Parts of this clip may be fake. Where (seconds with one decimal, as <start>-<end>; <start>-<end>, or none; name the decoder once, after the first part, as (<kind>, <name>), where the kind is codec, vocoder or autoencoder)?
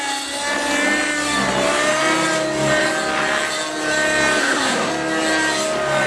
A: 4.4-4.9 (codec, SNAC)